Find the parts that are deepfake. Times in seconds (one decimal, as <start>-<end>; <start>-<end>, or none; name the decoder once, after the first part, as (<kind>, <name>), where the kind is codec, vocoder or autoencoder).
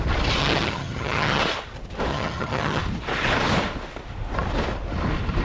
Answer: 0.4-1.4 (vocoder, HiFi-GAN); 2.1-2.8